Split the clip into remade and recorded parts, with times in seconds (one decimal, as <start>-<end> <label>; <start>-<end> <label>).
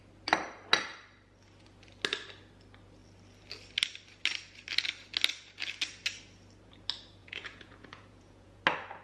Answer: 0.0-7.2 recorded; 7.2-8.6 remade; 8.6-9.0 recorded